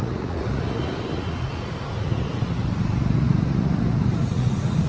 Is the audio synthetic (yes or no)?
yes